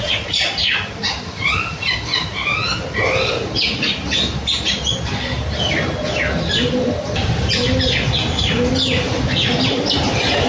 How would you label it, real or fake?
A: real